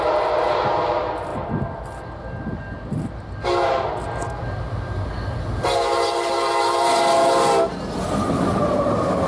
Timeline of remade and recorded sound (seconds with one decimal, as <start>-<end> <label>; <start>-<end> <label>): 0.0-9.3 recorded